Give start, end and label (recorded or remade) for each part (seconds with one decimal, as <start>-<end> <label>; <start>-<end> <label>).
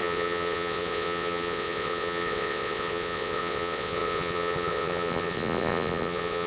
0.0-6.5 remade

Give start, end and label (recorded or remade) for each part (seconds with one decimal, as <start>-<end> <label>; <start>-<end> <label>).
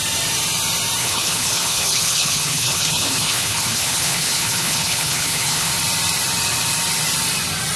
0.0-1.0 recorded; 1.0-5.7 remade; 5.7-7.8 recorded